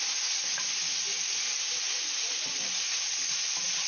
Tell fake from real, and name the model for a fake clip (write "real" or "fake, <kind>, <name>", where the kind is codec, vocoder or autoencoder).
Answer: real